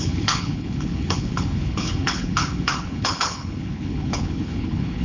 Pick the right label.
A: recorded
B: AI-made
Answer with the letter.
B